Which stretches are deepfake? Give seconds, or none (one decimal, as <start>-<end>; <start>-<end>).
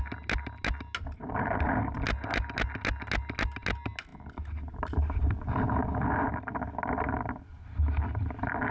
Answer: none